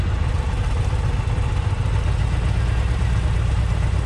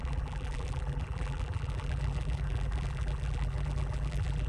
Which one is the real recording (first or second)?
first